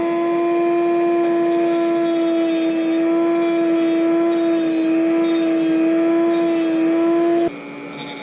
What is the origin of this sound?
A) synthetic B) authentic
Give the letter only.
B